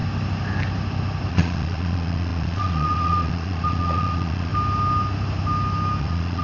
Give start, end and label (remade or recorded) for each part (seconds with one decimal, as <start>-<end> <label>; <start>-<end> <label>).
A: 0.0-1.3 recorded; 1.3-4.5 remade; 4.5-6.0 recorded; 6.0-6.4 remade